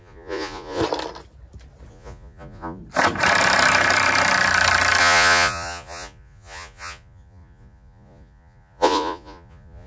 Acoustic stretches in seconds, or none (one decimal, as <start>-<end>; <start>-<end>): 0.8-1.9; 2.8-5.0